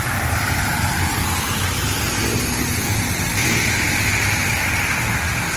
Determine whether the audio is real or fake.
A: real